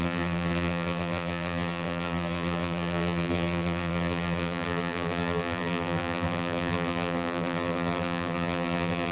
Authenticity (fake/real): fake